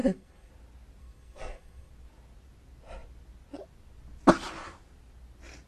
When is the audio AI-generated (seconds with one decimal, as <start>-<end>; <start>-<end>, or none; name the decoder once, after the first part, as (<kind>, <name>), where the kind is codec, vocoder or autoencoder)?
0.0-0.5 (codec, SNAC); 1.0-1.9